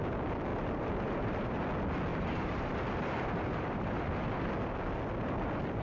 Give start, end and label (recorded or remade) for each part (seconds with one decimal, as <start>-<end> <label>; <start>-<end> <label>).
0.0-0.5 recorded; 0.5-1.6 remade; 1.6-2.1 recorded; 2.1-4.6 remade; 4.6-5.8 recorded